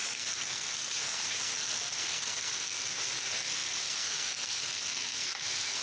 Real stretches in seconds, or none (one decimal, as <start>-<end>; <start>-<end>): none